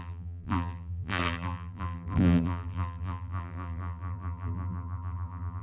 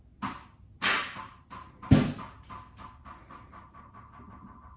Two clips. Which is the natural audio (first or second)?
second